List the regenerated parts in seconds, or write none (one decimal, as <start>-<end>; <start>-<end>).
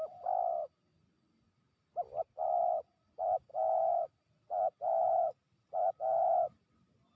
none